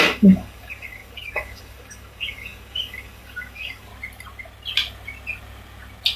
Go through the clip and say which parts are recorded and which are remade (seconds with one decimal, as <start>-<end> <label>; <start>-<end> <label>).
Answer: 0.0-3.9 remade; 3.9-6.2 recorded